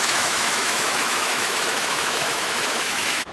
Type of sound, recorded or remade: remade